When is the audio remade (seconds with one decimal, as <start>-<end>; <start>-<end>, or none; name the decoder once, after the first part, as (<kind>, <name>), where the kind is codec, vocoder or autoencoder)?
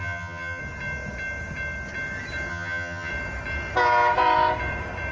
0.0-0.6 (vocoder, HiFi-GAN); 2.5-3.1